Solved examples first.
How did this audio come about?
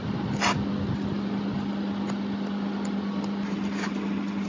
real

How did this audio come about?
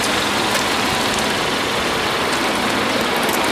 real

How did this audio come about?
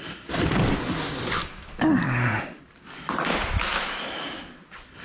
fake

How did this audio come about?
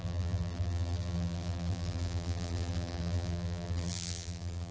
fake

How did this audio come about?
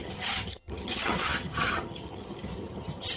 fake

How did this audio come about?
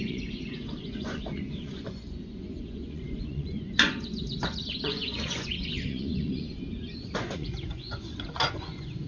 fake